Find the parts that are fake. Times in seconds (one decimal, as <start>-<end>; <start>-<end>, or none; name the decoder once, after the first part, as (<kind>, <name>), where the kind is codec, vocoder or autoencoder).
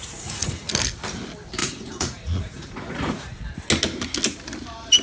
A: 0.0-0.7 (vocoder, Vocos); 1.6-3.4